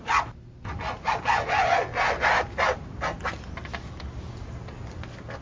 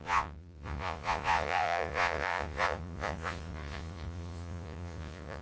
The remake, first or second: second